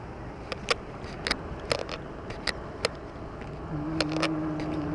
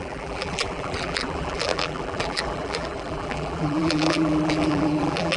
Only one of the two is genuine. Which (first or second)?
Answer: first